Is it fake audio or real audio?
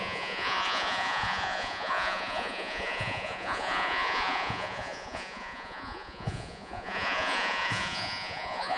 fake